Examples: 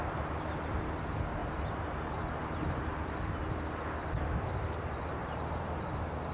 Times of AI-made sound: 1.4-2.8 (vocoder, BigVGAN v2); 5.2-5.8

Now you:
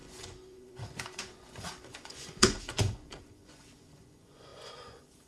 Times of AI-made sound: 0.0-5.3 (vocoder, Vocos)

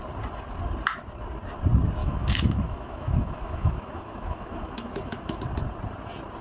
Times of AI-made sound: 2.0-5.4 (autoencoder, DAC-VAE)

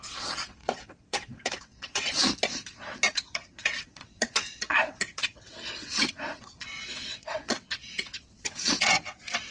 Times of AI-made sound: 0.0-2.2 (vocoder, WaveNeXt); 3.1-9.5